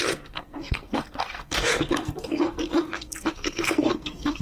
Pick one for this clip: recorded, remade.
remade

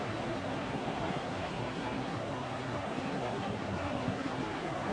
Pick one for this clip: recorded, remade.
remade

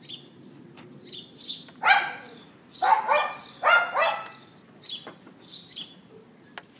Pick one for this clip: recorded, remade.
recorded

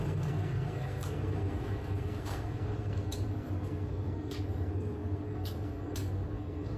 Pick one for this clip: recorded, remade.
remade